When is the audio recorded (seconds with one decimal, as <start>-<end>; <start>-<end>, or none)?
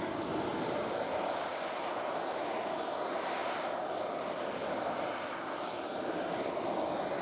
0.0-0.5; 1.6-3.4; 3.9-7.2